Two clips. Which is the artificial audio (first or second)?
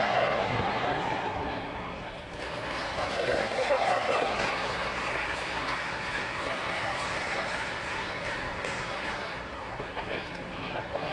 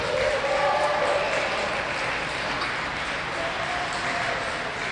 first